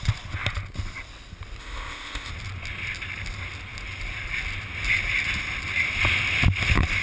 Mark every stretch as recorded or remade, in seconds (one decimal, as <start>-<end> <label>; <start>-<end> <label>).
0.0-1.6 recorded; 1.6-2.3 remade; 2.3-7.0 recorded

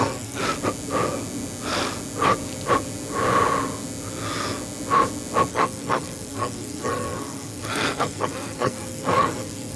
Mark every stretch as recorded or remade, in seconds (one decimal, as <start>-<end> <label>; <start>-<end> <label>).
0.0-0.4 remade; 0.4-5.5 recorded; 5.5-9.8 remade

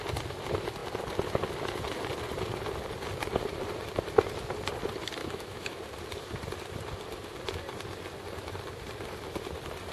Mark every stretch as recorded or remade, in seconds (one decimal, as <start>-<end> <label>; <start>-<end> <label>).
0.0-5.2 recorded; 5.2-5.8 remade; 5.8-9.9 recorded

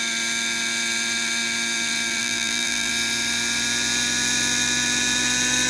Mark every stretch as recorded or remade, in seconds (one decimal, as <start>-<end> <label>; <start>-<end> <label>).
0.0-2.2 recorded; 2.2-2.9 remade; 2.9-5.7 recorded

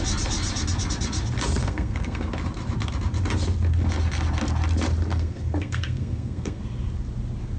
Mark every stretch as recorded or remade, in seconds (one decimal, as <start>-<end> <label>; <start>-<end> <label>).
0.0-1.6 recorded; 1.6-2.3 remade; 2.3-5.1 recorded; 5.1-6.6 remade; 6.6-7.6 recorded

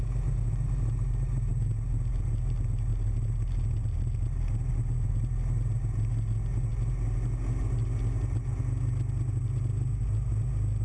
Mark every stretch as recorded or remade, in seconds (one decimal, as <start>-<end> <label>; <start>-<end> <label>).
0.0-10.8 recorded

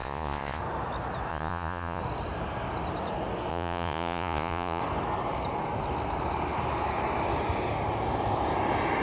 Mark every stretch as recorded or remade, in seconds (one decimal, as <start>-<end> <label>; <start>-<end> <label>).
0.0-0.6 remade; 0.6-1.3 recorded; 1.3-2.0 remade; 2.0-3.5 recorded; 3.5-4.8 remade; 4.8-9.0 recorded

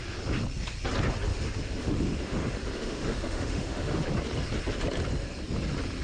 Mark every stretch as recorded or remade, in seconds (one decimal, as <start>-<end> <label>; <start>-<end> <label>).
0.0-1.3 recorded; 1.3-4.1 remade; 4.1-6.0 recorded